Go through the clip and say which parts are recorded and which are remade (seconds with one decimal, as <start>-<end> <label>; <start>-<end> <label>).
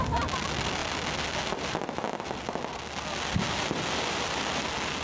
0.0-5.0 recorded